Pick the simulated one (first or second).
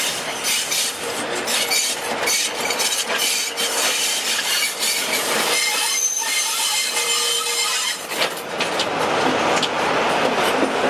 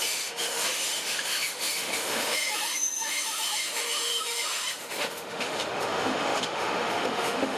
second